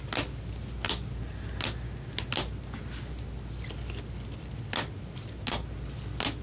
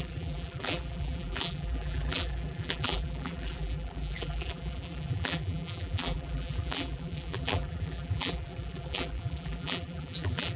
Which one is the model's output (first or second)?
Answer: second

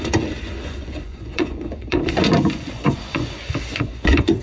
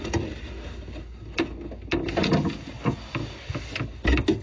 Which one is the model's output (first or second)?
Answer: first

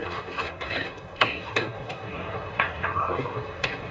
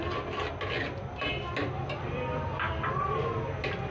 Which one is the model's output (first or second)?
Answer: first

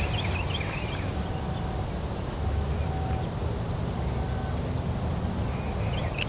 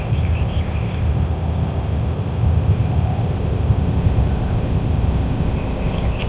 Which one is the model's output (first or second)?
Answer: second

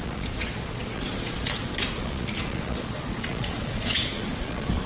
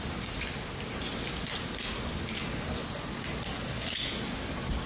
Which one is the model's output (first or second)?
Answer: first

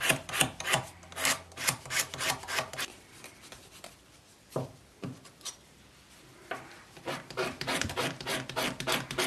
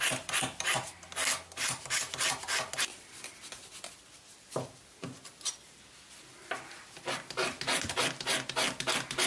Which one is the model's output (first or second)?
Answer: first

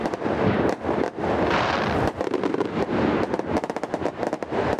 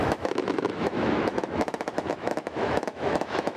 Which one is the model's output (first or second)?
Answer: second